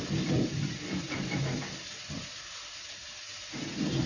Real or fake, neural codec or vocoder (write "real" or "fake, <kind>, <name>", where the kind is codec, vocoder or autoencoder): fake, vocoder, BigVGAN v2